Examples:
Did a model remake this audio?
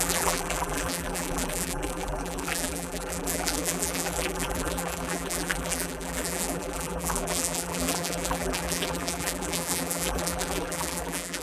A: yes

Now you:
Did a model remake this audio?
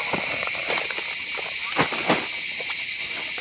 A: no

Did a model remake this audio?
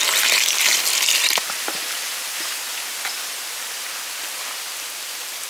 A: no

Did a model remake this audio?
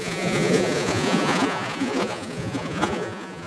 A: yes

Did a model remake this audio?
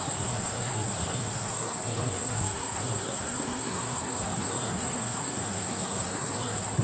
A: yes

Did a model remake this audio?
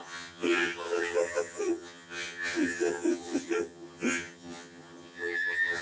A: yes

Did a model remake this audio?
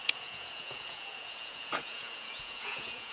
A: yes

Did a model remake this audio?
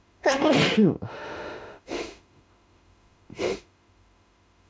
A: yes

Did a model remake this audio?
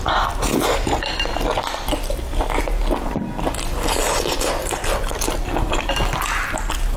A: no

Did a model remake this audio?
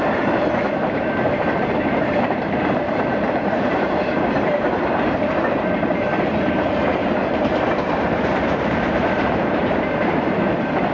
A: yes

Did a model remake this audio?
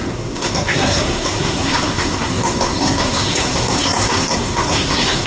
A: yes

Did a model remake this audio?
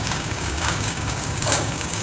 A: yes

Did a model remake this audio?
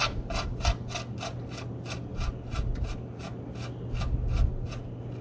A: no